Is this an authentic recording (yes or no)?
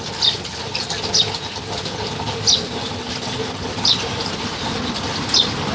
yes